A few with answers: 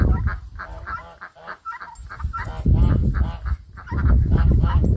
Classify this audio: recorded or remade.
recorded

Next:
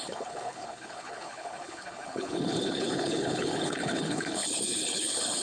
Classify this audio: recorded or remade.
remade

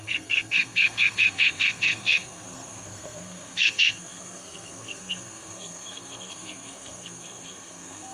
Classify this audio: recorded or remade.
remade